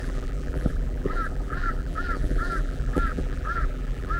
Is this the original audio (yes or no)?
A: no